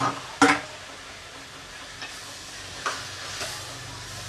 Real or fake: real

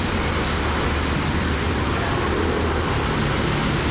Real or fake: real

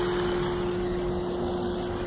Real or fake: real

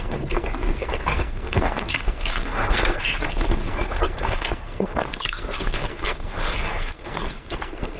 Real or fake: fake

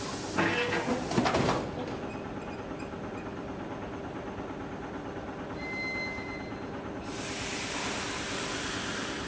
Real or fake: real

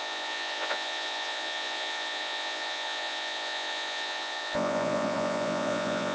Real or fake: fake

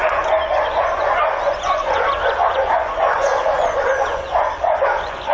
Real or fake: fake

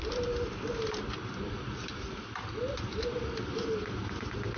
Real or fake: real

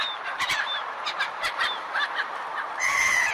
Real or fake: fake